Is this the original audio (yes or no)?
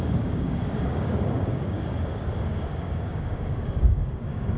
no